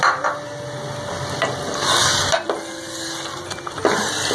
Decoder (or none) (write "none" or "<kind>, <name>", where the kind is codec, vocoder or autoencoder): none